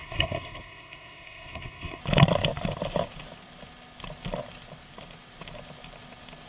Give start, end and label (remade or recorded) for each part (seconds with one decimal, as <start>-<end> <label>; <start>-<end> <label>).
0.0-2.0 remade; 2.0-6.5 recorded